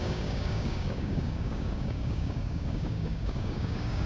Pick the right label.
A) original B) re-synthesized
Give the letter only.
B